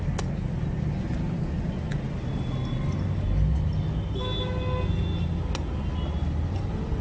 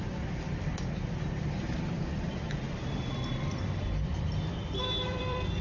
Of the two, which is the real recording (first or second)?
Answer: first